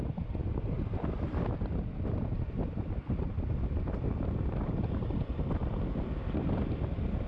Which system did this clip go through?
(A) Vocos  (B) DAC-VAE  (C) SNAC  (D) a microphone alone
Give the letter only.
D